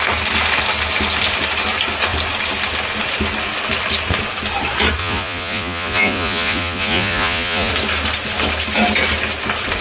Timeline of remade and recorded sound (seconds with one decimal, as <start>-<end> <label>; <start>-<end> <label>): 0.0-5.0 recorded; 5.0-7.7 remade; 7.7-9.8 recorded